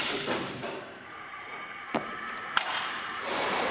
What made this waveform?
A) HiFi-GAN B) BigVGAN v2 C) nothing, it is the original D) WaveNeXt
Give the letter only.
B